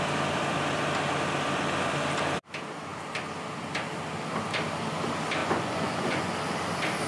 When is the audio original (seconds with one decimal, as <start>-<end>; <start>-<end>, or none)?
0.0-5.4; 6.3-7.1